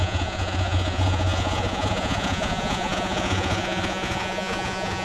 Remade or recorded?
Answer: remade